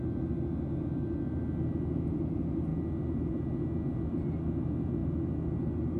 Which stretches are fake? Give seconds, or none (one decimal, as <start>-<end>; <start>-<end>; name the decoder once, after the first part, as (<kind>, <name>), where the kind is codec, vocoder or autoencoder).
none